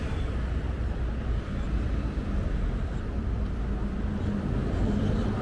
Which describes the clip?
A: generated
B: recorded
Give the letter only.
B